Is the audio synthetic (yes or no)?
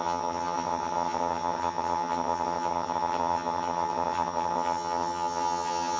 yes